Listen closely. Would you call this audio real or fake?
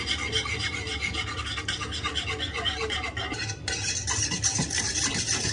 real